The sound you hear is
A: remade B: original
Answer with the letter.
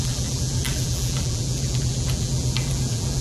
A